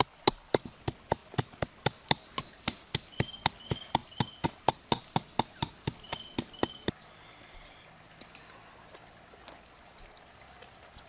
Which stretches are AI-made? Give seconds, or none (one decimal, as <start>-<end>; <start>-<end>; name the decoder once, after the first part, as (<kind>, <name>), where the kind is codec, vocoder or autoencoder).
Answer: none